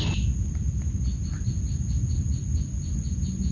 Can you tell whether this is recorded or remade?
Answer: recorded